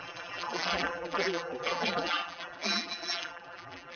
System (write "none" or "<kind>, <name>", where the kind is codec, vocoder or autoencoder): vocoder, BigVGAN v2